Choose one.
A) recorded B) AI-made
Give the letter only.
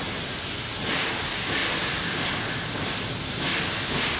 A